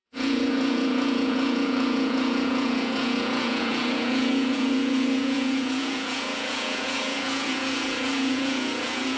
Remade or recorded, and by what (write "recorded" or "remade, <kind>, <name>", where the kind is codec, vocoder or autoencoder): remade, vocoder, Vocos